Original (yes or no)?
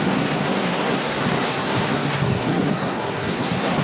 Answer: no